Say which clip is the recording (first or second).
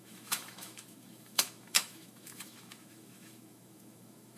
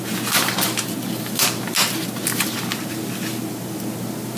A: second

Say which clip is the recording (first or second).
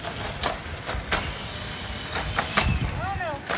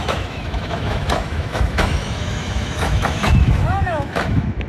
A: first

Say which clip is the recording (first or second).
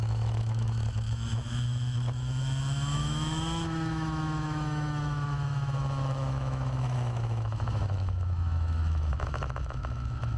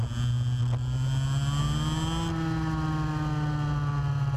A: second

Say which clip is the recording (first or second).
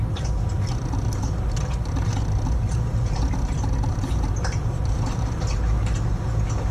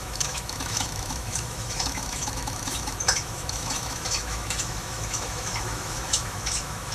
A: first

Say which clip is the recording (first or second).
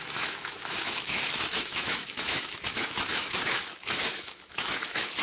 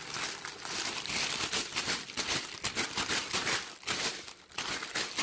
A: second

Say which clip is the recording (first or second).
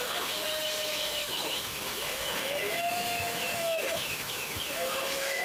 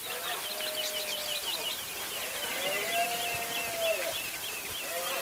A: second